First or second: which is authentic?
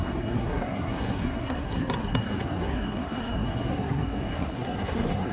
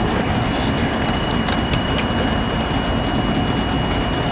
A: second